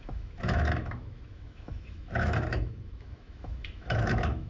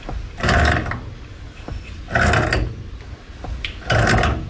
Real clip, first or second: second